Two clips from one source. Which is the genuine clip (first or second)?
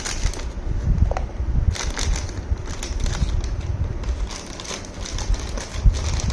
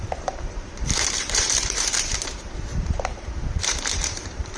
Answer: first